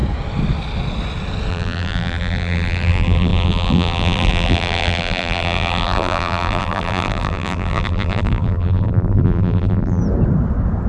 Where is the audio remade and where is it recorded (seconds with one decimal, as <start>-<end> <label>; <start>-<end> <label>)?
0.0-1.5 recorded; 1.5-10.0 remade; 10.0-10.9 recorded